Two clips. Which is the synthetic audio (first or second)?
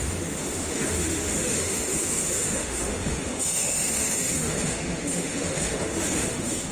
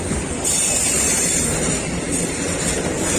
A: first